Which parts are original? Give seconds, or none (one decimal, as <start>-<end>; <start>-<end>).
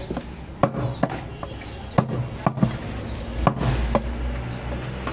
0.0-5.1